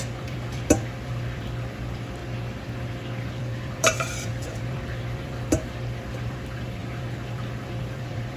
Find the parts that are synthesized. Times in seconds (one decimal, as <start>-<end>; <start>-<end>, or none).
0.0-2.2; 3.3-8.4